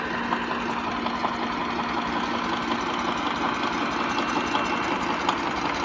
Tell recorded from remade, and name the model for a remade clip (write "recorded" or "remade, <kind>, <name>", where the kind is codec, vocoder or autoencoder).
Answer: recorded